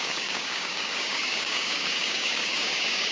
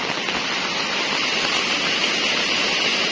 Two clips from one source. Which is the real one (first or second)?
second